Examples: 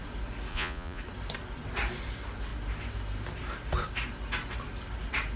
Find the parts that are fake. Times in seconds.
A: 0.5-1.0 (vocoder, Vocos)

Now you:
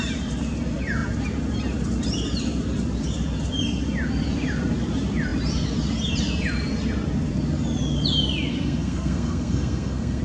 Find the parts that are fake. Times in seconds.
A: 8.5-10.2 (codec, SNAC)